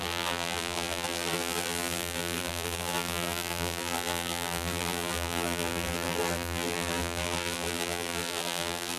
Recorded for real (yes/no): no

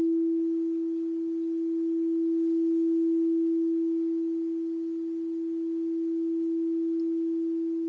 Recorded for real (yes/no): yes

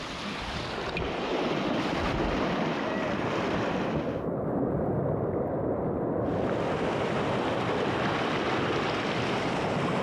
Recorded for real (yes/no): yes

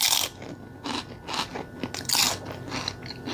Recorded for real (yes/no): yes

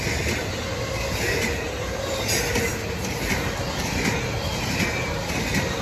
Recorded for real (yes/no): yes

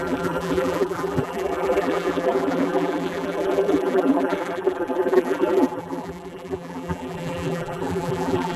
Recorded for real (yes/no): no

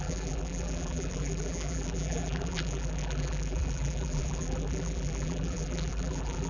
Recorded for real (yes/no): no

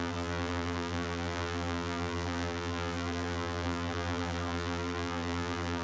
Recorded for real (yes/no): no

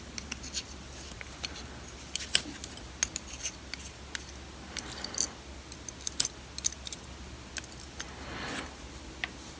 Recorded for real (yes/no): yes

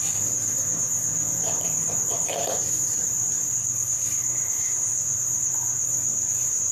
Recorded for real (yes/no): no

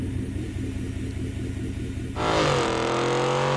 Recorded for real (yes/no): yes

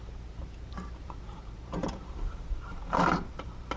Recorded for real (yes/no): no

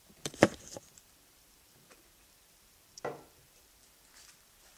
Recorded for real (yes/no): no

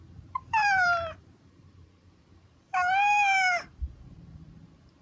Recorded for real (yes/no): no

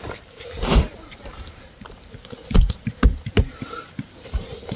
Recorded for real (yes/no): no